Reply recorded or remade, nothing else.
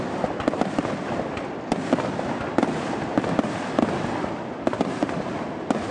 remade